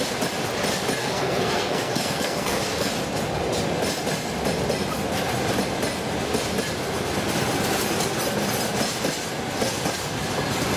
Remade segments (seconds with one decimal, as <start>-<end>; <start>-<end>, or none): 1.0-2.9